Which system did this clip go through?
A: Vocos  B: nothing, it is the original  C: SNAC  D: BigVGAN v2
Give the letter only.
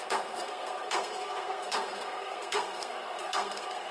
C